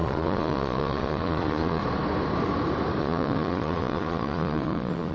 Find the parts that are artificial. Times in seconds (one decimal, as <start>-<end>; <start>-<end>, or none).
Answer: 0.0-1.8; 3.0-5.1